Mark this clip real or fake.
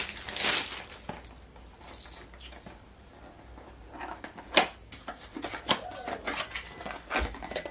real